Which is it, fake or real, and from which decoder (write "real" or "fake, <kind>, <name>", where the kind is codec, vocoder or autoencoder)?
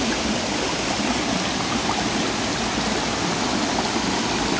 real